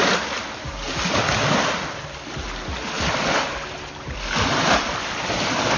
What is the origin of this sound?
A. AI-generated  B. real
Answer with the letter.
B